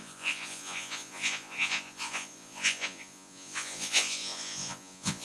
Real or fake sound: fake